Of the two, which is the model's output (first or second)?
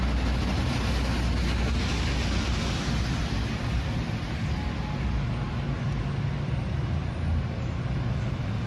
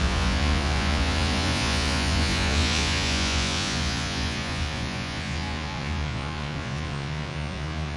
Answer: second